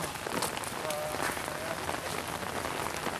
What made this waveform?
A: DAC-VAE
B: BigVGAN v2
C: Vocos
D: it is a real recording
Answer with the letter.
D